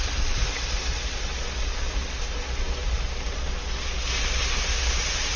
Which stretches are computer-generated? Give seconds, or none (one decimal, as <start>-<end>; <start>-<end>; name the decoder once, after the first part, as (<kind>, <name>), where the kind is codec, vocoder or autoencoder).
0.0-2.8 (vocoder, BigVGAN v2); 5.0-5.4